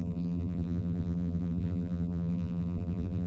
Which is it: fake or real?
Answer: fake